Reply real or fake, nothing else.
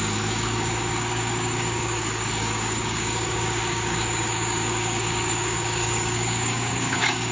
fake